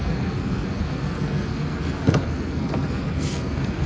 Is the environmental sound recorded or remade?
remade